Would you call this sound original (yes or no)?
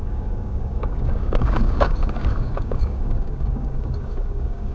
no